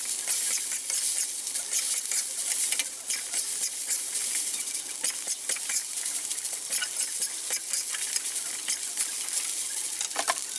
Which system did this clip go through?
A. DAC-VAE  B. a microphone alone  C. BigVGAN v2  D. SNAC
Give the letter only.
B